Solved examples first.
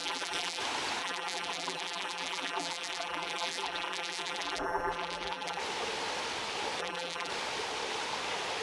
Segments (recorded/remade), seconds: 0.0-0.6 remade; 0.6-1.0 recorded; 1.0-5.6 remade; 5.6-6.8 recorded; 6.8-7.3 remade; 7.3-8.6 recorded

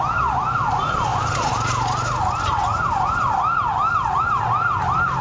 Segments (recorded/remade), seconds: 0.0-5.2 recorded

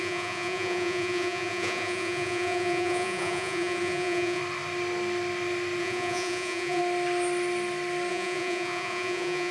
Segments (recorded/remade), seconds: 0.0-4.4 remade; 4.4-5.8 recorded; 5.8-6.8 remade; 6.8-8.1 recorded; 8.1-9.5 remade